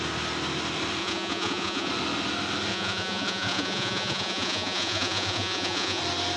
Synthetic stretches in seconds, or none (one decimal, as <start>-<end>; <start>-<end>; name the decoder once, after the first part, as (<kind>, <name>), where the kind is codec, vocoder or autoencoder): 1.0-1.9 (vocoder, Vocos); 2.7-6.0